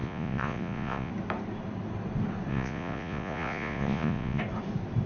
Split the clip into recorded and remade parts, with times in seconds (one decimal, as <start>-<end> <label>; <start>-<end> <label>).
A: 0.0-1.1 remade; 1.1-2.5 recorded; 2.5-4.4 remade; 4.4-5.1 recorded